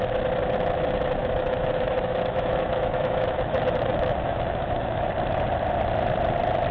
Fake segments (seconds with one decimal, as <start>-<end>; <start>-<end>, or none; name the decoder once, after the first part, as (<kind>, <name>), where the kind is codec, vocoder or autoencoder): 1.2-5.1 (autoencoder, DAC-VAE)